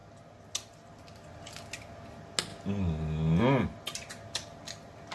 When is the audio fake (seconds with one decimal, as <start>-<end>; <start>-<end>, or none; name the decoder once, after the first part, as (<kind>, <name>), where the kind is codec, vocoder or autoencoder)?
none